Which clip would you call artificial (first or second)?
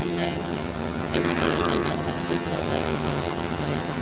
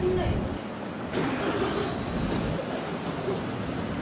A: first